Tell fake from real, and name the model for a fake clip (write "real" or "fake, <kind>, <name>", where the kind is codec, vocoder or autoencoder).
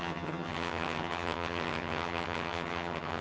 fake, vocoder, HiFi-GAN